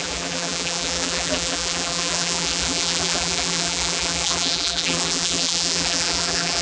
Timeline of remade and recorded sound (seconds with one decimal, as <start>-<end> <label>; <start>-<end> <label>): 0.0-6.6 remade